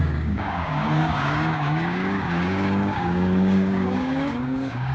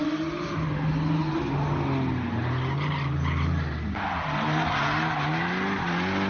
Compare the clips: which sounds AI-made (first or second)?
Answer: first